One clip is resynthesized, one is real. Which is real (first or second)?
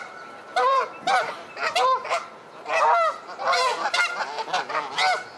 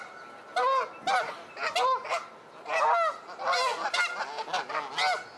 second